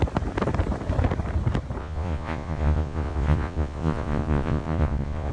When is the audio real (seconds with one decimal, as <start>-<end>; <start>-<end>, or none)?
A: 0.0-1.8